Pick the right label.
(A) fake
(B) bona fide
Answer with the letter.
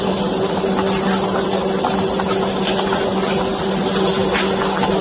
B